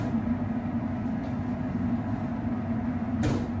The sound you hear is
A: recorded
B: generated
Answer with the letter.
A